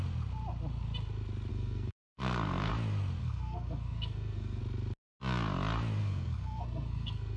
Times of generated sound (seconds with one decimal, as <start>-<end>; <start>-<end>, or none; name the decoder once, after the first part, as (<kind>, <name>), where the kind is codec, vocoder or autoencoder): 1.5-2.7 (codec, SNAC); 3.2-4.6; 6.0-7.4